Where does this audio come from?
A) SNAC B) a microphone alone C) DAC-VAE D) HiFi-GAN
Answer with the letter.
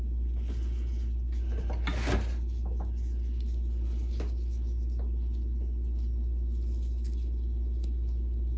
B